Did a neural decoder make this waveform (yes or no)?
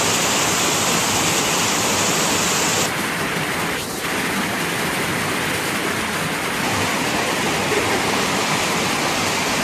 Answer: no